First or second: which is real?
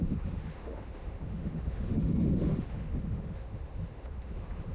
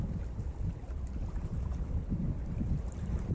second